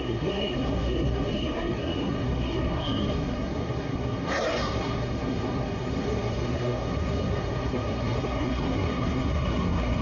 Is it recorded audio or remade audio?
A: remade